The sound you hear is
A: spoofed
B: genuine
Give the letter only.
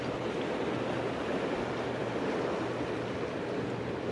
B